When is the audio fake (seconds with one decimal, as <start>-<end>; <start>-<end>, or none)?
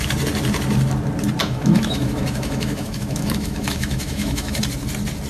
1.4-4.6